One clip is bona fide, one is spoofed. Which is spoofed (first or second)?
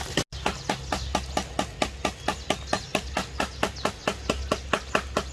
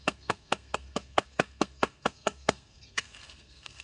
second